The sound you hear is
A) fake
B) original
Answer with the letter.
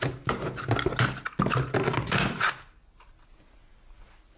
B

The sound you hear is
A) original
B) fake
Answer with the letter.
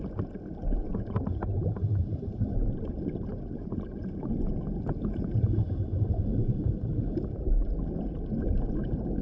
A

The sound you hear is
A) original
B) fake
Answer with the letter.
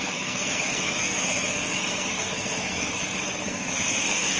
B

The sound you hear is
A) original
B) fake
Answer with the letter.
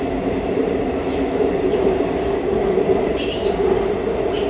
A